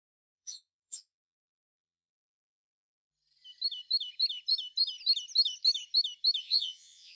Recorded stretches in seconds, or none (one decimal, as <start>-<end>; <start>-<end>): 2.1-6.4